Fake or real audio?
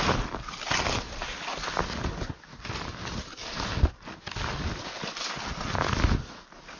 real